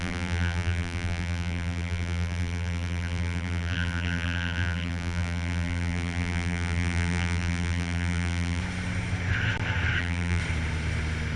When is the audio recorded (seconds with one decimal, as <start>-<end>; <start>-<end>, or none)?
8.6-10.0; 10.4-11.4